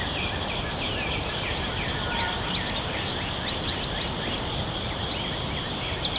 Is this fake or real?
real